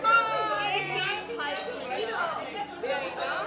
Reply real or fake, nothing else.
real